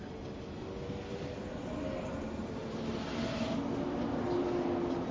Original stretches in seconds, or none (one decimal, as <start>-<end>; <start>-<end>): 0.0-5.1